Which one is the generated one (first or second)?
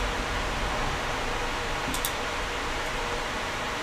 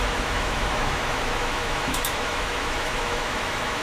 second